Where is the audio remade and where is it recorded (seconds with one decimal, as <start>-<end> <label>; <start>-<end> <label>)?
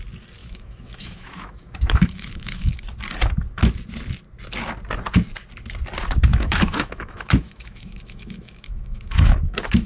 0.0-0.4 recorded; 0.4-2.8 remade; 2.8-6.3 recorded; 6.3-9.9 remade